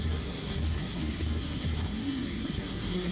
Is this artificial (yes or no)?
yes